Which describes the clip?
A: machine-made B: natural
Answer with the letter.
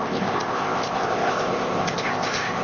A